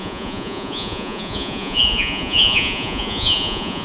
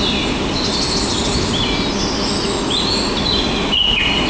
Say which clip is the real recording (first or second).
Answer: second